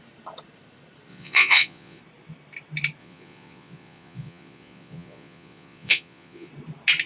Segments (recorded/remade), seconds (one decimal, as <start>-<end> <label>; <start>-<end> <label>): 0.0-1.1 recorded; 1.1-2.0 remade; 2.0-3.0 recorded; 3.0-6.5 remade; 6.5-7.1 recorded